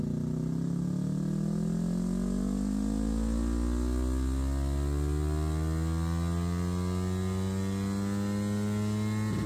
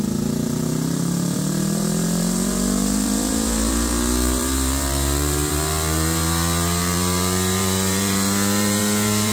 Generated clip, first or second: second